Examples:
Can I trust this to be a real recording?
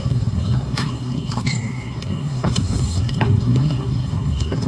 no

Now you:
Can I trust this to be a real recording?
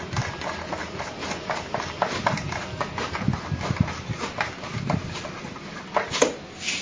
yes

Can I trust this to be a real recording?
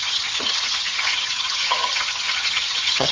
no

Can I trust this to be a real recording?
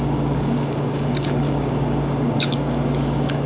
no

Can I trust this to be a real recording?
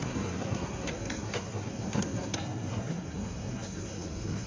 no